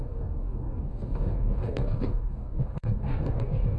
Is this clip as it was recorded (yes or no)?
no